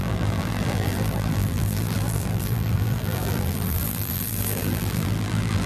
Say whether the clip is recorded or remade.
remade